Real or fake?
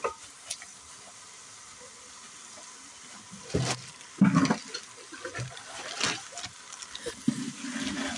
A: real